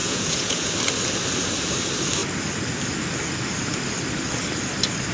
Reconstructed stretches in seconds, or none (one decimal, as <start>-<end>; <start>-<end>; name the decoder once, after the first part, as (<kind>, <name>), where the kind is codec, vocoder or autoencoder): 0.0-0.7 (vocoder, Vocos)